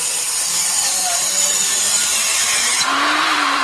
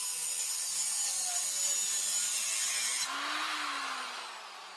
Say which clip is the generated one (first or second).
first